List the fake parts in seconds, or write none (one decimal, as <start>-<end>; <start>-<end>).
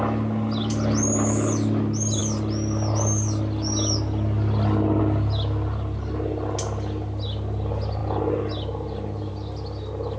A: none